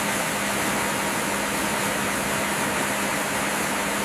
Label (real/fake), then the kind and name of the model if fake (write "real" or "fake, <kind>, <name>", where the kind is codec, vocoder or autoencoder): real